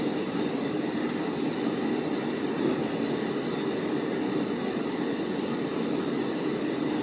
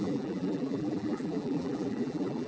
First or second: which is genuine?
first